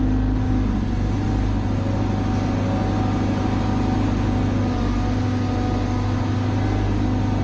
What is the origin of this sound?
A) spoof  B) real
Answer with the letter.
B